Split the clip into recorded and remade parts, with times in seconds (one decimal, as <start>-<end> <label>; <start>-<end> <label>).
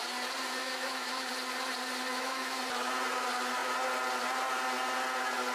0.0-0.6 recorded; 0.6-1.3 remade; 1.3-2.1 recorded; 2.1-2.6 remade; 2.6-5.5 recorded